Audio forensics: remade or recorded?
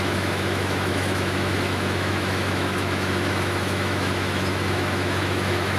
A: remade